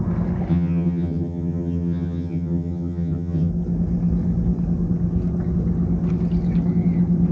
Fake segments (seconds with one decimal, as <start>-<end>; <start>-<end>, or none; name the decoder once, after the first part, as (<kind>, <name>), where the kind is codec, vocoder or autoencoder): 0.5-3.5 (vocoder, HiFi-GAN)